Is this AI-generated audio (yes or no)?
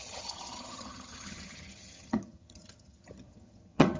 yes